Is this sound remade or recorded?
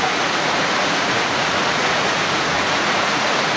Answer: remade